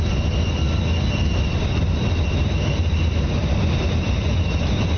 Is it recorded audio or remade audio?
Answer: recorded